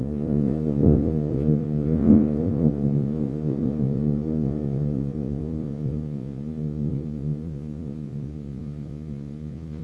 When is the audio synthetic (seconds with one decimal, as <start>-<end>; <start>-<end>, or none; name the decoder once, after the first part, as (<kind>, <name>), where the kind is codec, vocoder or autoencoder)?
0.0-9.8 (vocoder, Vocos)